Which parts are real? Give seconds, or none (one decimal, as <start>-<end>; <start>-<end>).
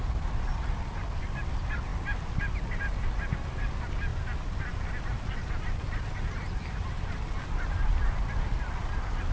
none